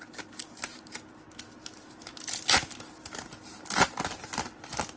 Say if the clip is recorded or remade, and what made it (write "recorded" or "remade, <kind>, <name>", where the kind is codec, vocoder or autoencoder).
recorded